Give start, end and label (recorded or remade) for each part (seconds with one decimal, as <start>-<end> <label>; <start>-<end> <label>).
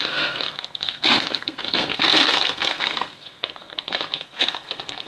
0.0-5.1 remade